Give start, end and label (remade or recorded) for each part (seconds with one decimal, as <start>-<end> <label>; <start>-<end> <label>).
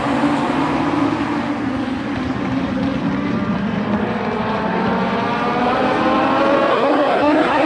0.0-6.7 recorded; 6.7-7.7 remade